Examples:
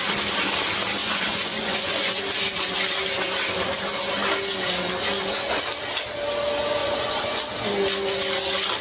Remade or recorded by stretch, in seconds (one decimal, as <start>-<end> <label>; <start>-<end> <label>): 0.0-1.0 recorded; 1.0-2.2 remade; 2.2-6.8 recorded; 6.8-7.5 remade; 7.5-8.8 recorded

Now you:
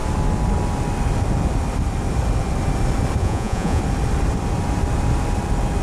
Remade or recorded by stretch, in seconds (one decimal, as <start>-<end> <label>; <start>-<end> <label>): 0.0-3.2 recorded; 3.2-3.8 remade; 3.8-5.8 recorded

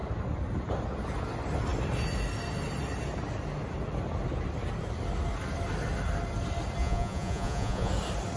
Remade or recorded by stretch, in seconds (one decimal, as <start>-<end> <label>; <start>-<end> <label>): 0.0-6.8 recorded; 6.8-7.9 remade; 7.9-8.4 recorded

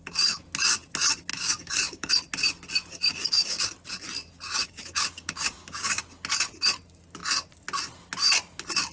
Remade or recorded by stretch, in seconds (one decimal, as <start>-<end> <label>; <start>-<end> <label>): 0.0-1.3 recorded; 1.3-2.1 remade; 2.1-3.1 recorded; 3.1-3.7 remade; 3.7-4.6 recorded; 4.6-6.0 remade; 6.0-8.9 recorded

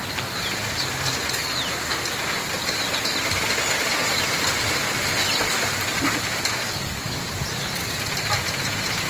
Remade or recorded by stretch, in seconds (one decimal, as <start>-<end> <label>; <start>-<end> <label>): 0.0-6.6 recorded; 6.6-7.2 remade; 7.2-9.1 recorded

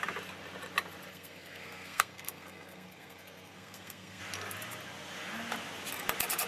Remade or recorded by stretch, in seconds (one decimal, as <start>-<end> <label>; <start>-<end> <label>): 0.0-1.1 recorded; 1.1-4.2 remade; 4.2-6.5 recorded

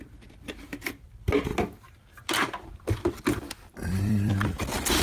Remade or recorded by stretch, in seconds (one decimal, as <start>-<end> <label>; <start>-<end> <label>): 0.0-1.5 remade; 1.5-3.2 recorded; 3.2-5.0 remade